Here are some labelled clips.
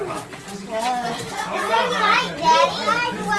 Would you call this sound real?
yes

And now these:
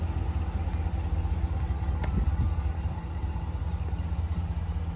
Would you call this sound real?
yes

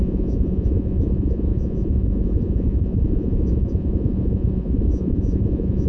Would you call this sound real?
no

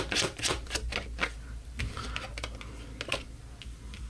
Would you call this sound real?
yes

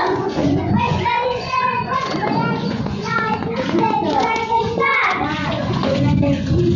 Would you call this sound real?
no